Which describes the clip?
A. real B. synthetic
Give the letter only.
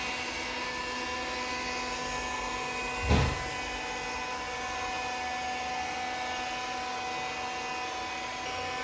A